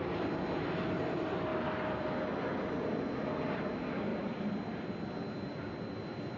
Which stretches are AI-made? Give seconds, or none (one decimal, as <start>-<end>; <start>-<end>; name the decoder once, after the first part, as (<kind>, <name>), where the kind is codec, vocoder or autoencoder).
none